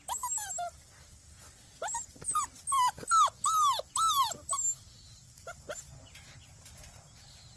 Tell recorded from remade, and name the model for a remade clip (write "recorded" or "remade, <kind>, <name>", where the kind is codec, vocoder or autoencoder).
recorded